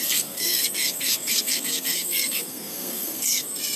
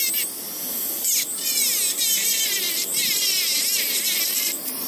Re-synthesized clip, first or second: first